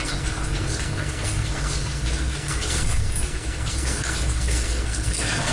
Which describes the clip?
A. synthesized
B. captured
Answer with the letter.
A